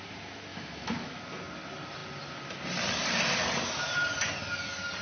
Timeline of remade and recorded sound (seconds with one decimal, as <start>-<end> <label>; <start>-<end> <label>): 0.0-0.5 recorded; 0.5-1.2 remade; 1.2-5.0 recorded